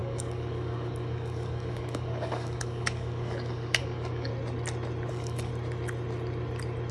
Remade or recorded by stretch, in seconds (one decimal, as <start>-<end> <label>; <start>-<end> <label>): 0.0-4.3 remade; 4.3-5.1 recorded; 5.1-5.5 remade; 5.5-6.9 recorded